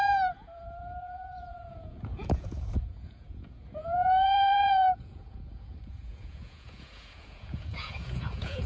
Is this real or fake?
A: fake